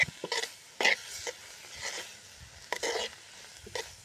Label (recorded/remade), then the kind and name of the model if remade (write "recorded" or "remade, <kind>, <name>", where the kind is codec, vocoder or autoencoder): recorded